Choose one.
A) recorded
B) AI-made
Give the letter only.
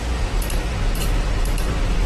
B